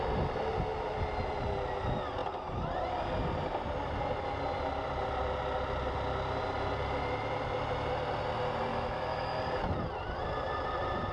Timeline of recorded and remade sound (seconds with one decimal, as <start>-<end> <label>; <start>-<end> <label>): 0.0-8.7 recorded; 8.7-9.4 remade; 9.4-11.1 recorded